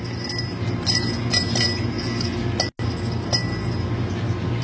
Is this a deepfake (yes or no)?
no